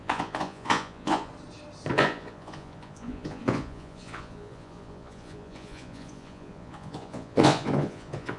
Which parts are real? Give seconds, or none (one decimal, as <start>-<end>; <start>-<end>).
1.3-1.9